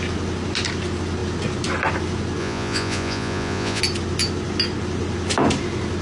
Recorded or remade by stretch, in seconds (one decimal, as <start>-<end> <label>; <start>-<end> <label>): 0.0-2.4 recorded; 2.4-3.8 remade; 3.8-6.0 recorded